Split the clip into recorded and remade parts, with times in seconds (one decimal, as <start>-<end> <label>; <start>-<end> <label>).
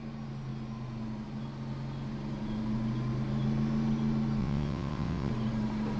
0.0-4.4 recorded; 4.4-5.3 remade; 5.3-6.0 recorded